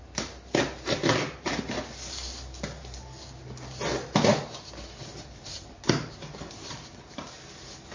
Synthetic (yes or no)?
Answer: no